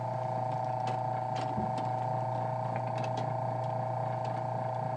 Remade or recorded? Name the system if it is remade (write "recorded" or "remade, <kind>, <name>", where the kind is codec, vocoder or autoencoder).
recorded